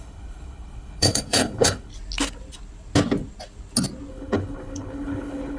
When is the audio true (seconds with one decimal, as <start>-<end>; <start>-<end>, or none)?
1.9-4.1